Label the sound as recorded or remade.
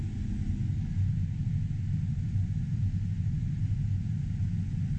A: recorded